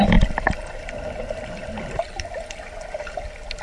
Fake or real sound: fake